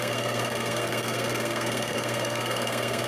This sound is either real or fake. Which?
fake